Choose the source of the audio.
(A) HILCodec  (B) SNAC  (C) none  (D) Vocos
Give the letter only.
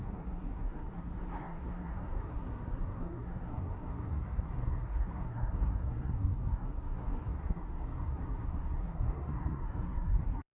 B